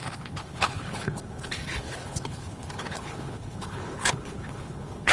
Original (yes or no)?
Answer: no